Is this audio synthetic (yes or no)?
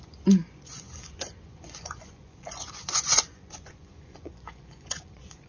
yes